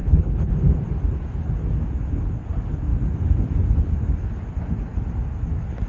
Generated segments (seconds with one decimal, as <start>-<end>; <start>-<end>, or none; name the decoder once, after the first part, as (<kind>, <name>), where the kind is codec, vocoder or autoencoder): 0.0-0.5 (codec, HILCodec)